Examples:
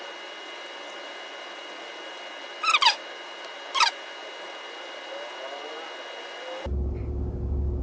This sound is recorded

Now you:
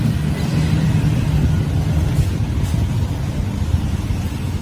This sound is recorded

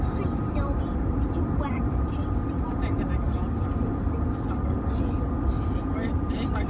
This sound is recorded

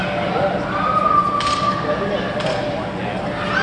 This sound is recorded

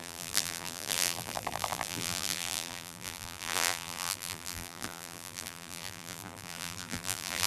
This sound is remade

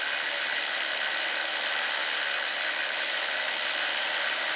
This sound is recorded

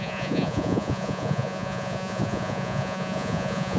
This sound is remade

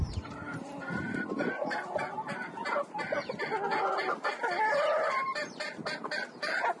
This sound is recorded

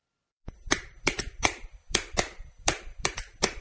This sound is remade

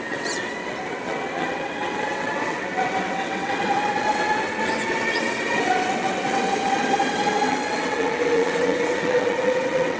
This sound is remade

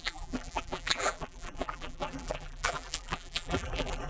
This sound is remade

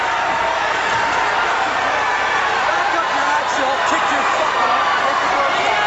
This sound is recorded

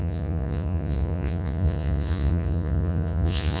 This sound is remade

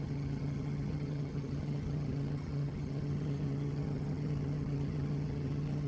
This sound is remade